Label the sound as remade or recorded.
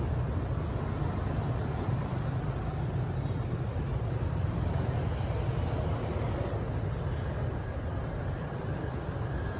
recorded